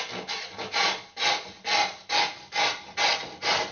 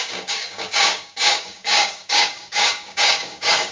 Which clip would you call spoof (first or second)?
second